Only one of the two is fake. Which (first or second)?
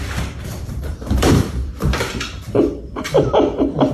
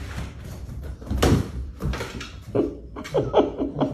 first